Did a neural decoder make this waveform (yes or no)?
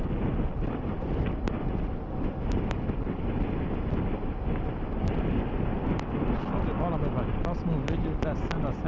no